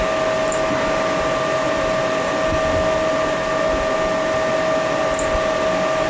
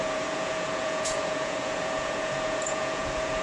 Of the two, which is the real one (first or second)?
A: first